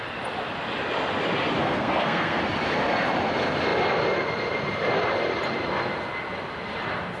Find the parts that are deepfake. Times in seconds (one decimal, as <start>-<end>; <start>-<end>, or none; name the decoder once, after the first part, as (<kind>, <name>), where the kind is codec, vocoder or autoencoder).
1.6-2.4 (codec, SNAC)